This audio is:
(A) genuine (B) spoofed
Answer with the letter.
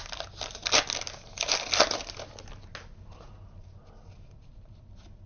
A